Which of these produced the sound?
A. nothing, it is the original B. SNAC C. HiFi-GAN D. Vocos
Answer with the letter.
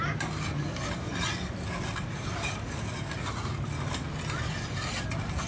A